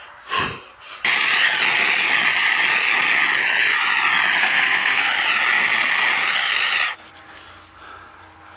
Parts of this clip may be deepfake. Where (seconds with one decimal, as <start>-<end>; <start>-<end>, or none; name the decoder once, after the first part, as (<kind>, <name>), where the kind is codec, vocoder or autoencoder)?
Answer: 4.4-5.1 (codec, SNAC)